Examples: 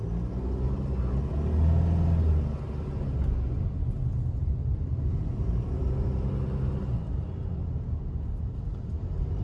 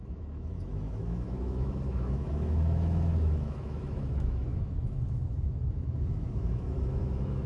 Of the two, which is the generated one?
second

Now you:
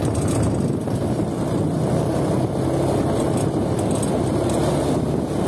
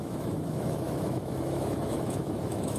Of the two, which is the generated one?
second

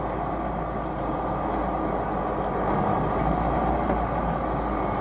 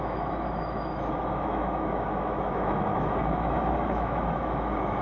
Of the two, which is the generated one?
second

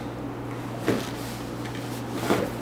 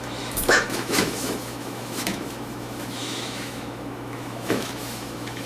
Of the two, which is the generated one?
second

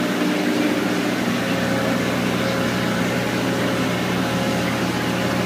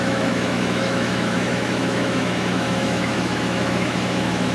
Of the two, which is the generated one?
second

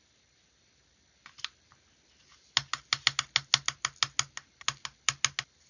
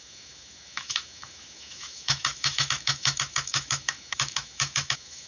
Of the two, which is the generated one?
second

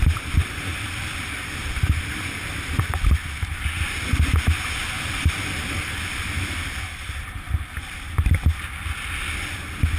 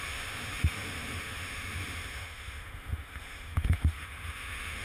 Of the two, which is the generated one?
second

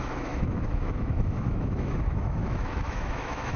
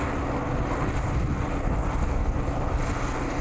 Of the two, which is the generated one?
first